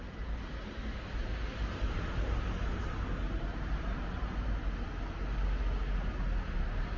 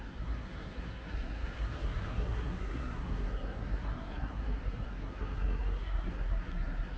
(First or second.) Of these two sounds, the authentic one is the first